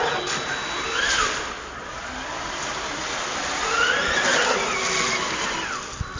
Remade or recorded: recorded